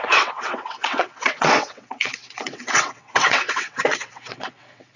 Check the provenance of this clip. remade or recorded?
remade